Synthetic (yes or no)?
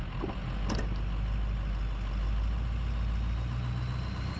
no